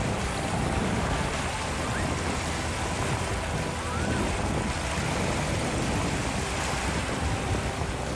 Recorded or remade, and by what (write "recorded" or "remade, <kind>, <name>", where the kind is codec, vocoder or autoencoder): recorded